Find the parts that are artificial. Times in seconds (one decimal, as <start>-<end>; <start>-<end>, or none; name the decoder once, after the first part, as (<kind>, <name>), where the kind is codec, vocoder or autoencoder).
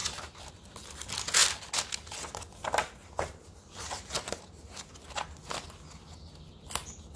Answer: none